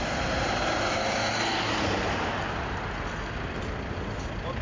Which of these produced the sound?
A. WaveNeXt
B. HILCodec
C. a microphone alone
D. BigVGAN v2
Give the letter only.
C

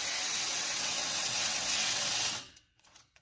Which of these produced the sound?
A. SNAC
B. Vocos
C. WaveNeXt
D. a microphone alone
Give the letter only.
C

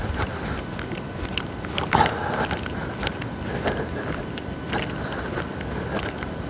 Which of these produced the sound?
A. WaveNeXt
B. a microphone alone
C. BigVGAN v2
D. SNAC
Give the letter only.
B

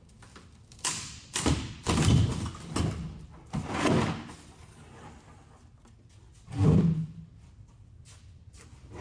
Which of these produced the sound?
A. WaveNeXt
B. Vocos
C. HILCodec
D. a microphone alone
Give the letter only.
D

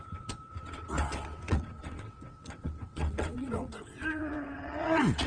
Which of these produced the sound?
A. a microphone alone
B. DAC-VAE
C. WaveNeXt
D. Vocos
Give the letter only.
C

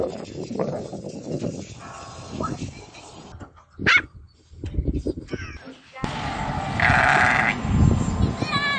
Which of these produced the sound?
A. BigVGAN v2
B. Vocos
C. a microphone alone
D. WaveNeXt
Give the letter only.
C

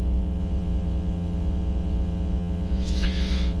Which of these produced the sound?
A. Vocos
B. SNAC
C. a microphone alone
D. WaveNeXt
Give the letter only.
D